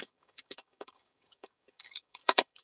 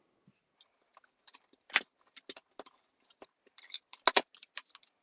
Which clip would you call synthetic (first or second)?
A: first